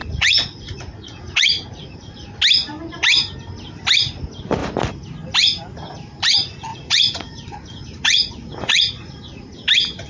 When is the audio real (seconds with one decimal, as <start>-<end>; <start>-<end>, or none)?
2.3-6.7; 9.5-10.1